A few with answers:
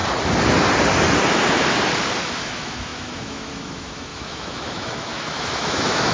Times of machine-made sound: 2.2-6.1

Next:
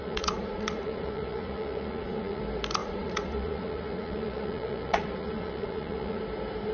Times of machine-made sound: 0.0-2.4; 2.8-6.2